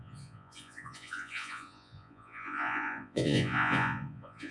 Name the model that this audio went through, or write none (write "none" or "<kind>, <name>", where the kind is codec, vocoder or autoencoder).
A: vocoder, Vocos